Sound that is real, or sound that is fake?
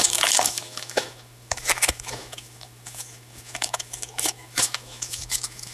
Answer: fake